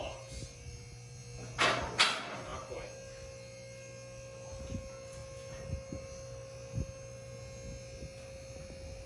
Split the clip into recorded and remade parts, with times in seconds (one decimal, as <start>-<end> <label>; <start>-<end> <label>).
0.0-9.1 recorded